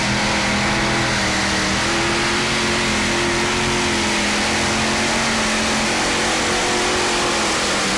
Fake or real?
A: real